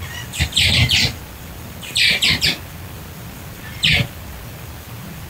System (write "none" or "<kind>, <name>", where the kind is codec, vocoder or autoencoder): vocoder, BigVGAN v2